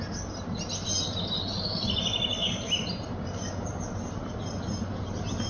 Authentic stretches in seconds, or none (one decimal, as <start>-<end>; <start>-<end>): 0.0-2.4; 4.3-5.5